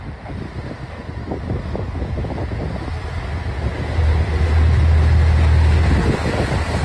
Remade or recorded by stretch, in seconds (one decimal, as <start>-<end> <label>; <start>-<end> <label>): 0.0-2.6 recorded; 2.6-3.1 remade; 3.1-6.8 recorded